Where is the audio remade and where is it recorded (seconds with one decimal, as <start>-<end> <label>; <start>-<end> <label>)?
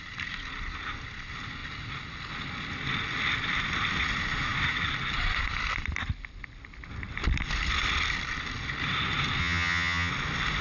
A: 0.0-9.4 recorded; 9.4-10.1 remade; 10.1-10.6 recorded